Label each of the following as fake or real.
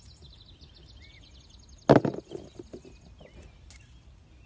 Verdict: real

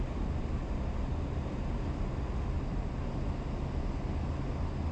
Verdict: real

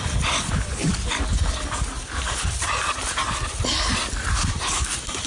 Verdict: real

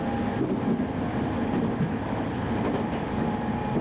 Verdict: real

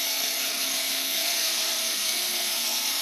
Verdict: fake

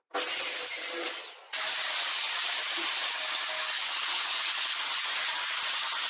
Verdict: real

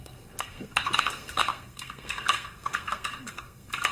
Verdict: fake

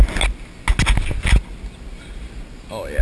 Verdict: real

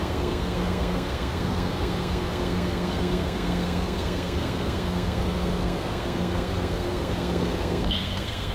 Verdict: fake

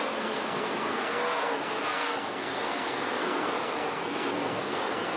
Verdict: fake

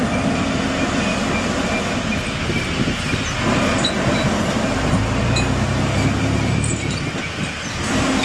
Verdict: real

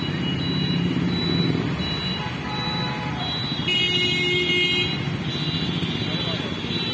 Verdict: real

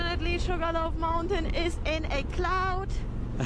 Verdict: real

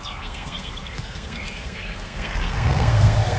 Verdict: fake